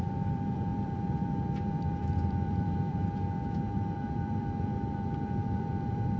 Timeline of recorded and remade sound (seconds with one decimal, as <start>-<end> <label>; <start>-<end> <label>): 0.0-6.2 remade